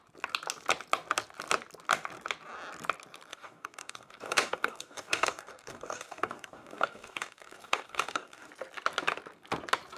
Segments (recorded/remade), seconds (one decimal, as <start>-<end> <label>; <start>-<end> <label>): 0.0-3.3 recorded; 3.3-8.5 remade; 8.5-10.0 recorded